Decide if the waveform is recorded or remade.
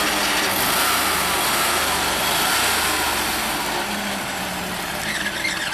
recorded